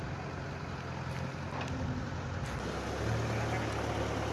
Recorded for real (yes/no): yes